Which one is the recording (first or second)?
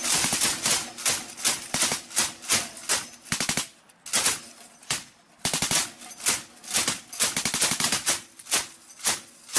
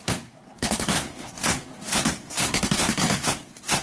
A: first